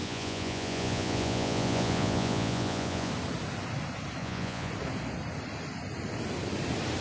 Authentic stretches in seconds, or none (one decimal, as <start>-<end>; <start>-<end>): 3.1-4.2; 4.7-7.0